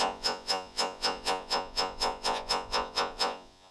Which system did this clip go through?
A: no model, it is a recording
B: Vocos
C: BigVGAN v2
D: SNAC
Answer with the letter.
B